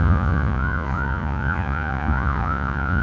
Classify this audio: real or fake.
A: fake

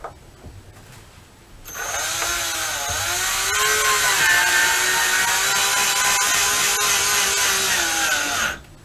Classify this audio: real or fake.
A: real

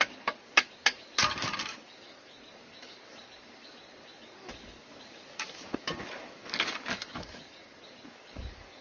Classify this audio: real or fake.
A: fake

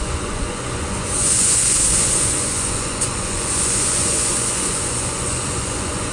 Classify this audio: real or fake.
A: fake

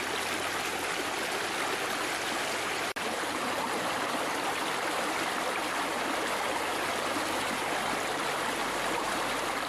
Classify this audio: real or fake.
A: real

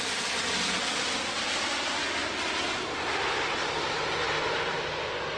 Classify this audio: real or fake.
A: real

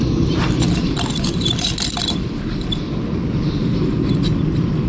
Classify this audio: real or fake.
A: real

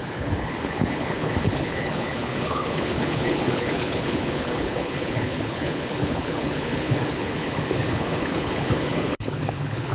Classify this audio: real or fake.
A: fake